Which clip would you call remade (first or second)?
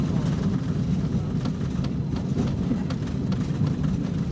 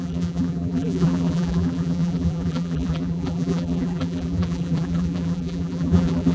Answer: second